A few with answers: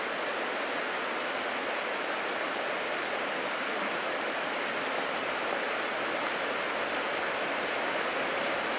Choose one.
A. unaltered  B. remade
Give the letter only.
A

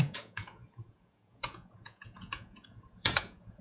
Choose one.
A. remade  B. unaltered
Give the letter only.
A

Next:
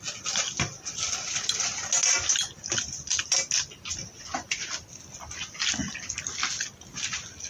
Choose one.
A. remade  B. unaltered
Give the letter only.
B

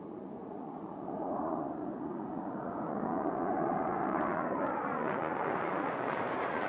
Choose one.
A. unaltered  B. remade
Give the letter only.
B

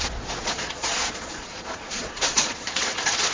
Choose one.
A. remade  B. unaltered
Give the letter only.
A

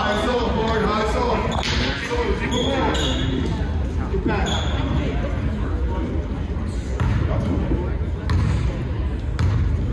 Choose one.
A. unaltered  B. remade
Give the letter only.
A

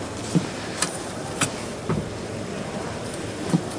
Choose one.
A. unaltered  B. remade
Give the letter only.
B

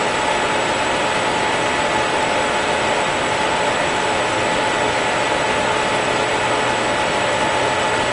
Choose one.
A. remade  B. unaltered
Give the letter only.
B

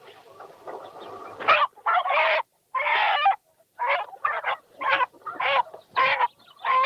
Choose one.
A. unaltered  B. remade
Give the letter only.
A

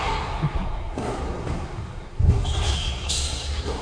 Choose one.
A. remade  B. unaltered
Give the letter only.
A